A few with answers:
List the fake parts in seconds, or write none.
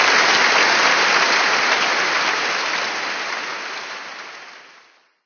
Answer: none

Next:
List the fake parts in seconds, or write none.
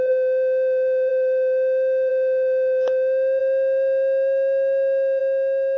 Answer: 1.1-2.1 (autoencoder, DAC-VAE)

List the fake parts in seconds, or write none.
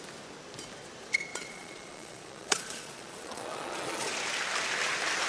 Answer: 1.3-4.1 (vocoder, Vocos)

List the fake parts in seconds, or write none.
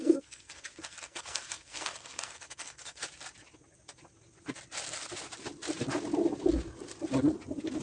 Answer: 0.0-3.0 (codec, SNAC)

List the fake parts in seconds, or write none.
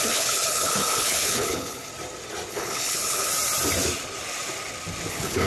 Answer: 0.0-1.9 (codec, HILCodec); 2.5-3.3; 5.1-5.5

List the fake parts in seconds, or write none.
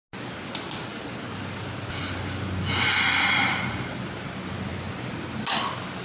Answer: none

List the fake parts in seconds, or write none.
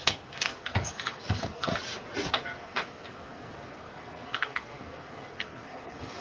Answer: 0.0-1.7 (codec, SNAC); 2.3-6.2